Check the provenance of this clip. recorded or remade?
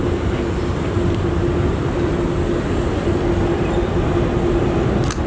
recorded